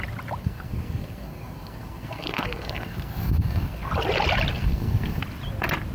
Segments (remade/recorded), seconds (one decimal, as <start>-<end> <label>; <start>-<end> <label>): 0.0-0.4 recorded; 0.4-3.9 remade; 3.9-4.5 recorded; 4.5-5.2 remade; 5.2-5.9 recorded